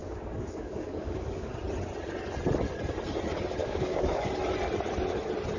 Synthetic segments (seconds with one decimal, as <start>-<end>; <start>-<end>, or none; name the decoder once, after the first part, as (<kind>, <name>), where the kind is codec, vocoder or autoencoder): 0.0-1.5 (codec, DAC); 3.6-4.3